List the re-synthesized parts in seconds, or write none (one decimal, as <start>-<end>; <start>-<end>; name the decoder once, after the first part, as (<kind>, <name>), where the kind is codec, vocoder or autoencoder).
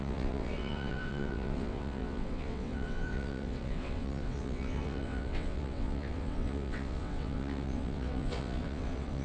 0.0-9.2 (vocoder, WaveNeXt)